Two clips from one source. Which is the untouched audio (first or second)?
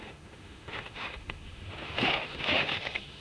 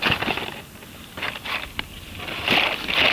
second